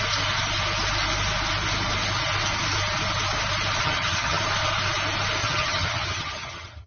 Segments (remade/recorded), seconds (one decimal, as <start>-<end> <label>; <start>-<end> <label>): 0.0-3.8 recorded; 3.8-4.4 remade; 4.4-5.4 recorded; 5.4-6.9 remade